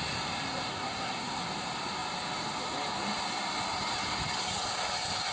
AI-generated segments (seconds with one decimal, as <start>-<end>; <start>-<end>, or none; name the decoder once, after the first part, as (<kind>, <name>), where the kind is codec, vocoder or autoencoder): 0.7-1.4 (codec, SNAC)

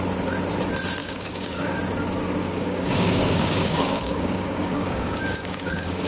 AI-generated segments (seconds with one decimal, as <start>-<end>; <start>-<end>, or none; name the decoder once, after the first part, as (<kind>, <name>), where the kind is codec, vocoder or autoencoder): 1.0-1.8 (codec, DAC); 2.4-6.1

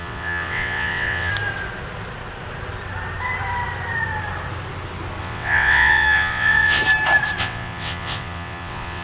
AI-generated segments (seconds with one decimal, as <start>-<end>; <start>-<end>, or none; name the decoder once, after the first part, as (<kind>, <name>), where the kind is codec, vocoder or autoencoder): 0.0-1.3 (vocoder, WaveNeXt); 5.2-6.8; 7.4-9.0

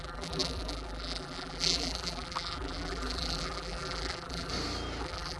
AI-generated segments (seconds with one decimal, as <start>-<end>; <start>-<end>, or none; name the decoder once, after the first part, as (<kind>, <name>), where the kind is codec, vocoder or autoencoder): 0.0-4.5 (vocoder, BigVGAN v2); 5.0-5.4

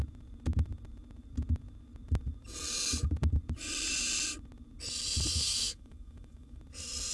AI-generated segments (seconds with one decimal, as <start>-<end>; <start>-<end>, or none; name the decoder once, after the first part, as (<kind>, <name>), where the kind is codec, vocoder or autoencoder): 5.3-6.6 (autoencoder, DAC-VAE)

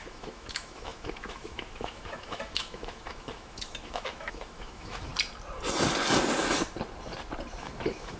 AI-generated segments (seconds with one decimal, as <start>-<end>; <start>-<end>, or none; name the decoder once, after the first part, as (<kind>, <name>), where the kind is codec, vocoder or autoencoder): 0.0-5.1 (autoencoder, DAC-VAE); 7.6-8.2